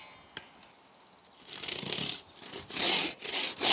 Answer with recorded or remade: recorded